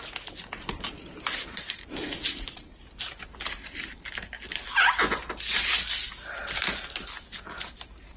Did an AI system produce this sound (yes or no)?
no